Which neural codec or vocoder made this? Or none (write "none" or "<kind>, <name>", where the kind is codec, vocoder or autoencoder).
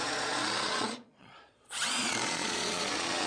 vocoder, Vocos